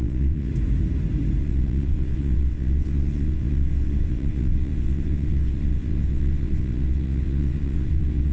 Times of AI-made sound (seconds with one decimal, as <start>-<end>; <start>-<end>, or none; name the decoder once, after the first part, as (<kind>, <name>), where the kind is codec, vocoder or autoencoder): 0.0-0.5 (vocoder, WaveNeXt); 1.4-8.3